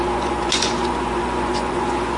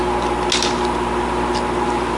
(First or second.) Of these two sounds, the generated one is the first